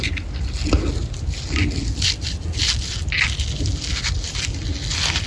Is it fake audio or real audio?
real